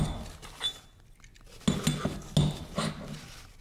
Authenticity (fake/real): real